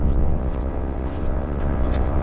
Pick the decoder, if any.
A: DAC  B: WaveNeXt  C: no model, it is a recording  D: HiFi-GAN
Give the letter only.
B